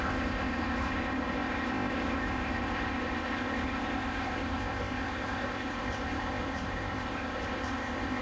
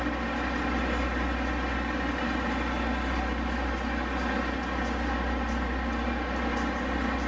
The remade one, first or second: first